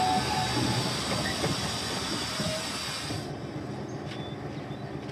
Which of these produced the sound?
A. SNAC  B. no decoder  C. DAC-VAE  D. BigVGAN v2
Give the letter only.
B